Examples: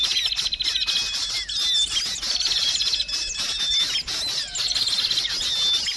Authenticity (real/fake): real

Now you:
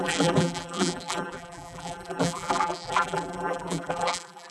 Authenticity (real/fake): fake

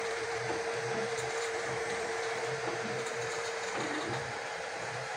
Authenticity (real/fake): fake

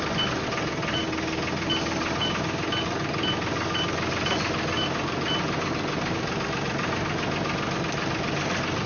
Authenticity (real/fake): real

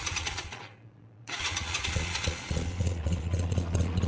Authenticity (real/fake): fake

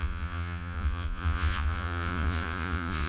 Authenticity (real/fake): fake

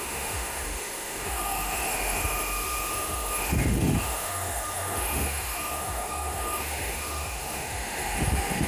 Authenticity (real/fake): fake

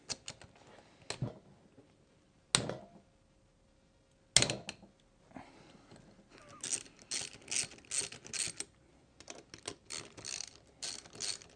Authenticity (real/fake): real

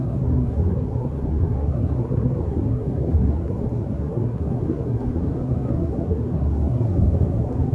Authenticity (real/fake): fake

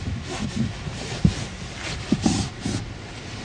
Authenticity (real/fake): real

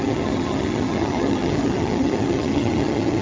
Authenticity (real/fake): fake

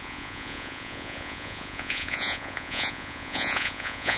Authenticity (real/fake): fake